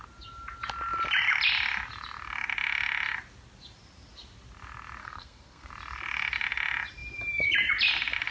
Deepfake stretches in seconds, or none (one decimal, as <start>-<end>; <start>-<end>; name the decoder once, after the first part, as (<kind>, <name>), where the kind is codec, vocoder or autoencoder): 5.0-5.7 (codec, SNAC)